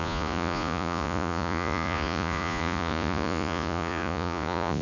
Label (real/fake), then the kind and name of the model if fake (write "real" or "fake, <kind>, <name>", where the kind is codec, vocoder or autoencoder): fake, vocoder, Vocos